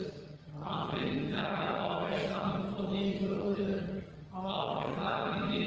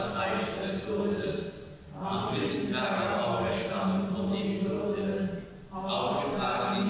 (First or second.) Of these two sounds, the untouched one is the second